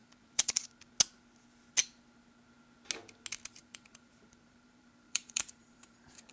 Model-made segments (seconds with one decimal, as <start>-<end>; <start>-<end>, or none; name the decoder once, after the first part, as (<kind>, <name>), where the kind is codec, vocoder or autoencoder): 0.0-0.7 (vocoder, BigVGAN v2); 3.6-6.3